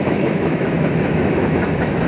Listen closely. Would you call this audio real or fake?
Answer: fake